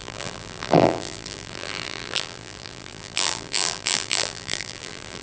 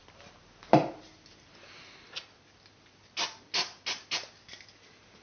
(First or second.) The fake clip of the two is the first